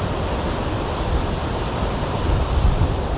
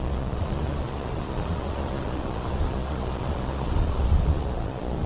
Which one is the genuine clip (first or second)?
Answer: first